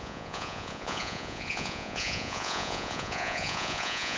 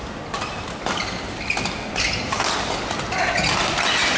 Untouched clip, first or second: second